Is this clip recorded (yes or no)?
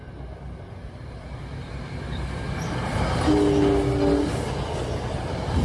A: yes